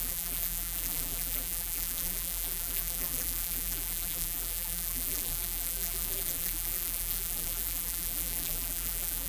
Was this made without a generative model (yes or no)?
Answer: no